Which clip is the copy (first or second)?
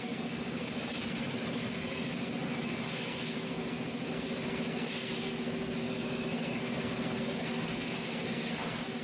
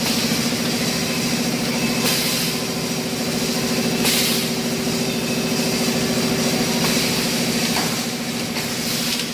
first